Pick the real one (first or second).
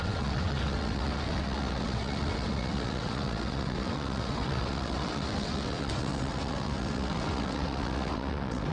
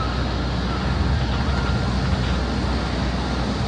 second